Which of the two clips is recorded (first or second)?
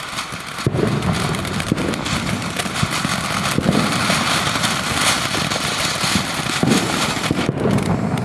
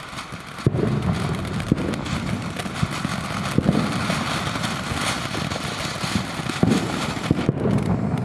second